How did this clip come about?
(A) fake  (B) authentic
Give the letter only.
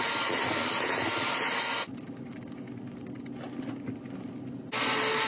B